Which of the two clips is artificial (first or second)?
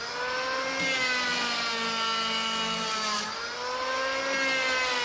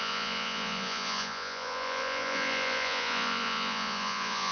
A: second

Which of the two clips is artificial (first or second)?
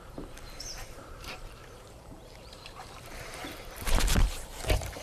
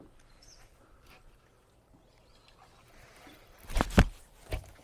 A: first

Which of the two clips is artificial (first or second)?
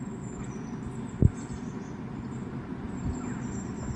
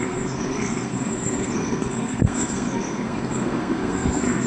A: second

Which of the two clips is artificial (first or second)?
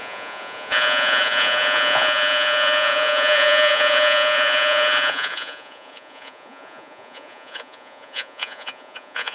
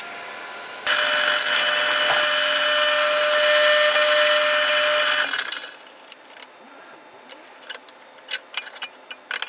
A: first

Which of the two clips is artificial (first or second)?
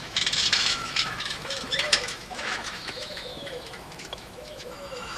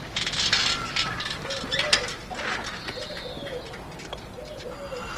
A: first